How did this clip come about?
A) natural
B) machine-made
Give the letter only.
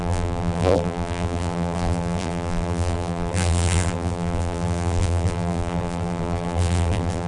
B